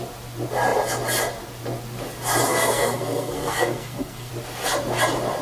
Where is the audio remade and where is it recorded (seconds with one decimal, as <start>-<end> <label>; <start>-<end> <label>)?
0.0-2.5 recorded; 2.5-4.3 remade; 4.3-5.4 recorded